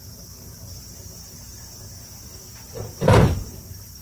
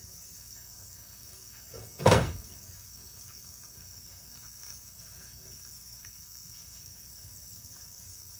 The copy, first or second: second